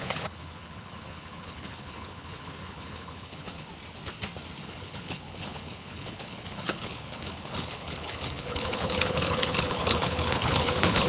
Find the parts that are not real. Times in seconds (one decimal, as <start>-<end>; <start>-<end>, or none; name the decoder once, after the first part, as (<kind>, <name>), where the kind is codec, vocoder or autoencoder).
0.0-3.7 (codec, HILCodec); 4.6-11.1